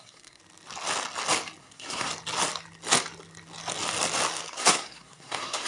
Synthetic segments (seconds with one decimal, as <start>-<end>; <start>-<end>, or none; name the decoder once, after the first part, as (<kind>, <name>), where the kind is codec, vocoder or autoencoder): 0.0-0.4 (codec, SNAC); 1.6-2.1; 4.5-5.7